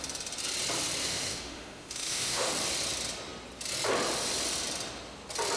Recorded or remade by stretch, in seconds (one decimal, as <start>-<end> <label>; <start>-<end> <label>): 0.0-1.0 recorded; 1.0-2.5 remade; 2.5-5.6 recorded